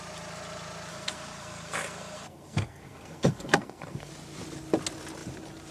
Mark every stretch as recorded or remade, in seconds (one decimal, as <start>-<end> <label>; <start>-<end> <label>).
0.0-0.9 recorded; 0.9-4.1 remade; 4.1-5.7 recorded